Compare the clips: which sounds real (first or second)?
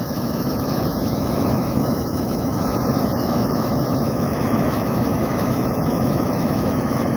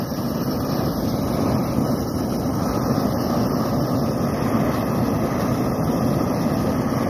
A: second